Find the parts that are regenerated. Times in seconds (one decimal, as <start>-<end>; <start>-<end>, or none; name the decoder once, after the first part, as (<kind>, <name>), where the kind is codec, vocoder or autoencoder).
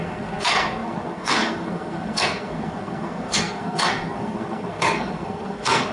0.0-5.9 (codec, SNAC)